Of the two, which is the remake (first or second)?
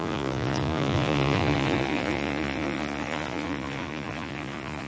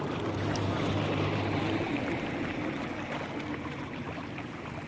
first